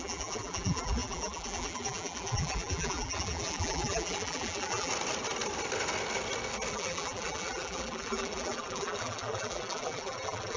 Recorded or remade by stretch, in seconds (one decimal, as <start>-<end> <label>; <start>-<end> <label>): 0.0-4.9 remade; 4.9-6.7 recorded; 6.7-10.6 remade